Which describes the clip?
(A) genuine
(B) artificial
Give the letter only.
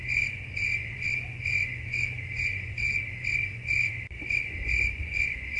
B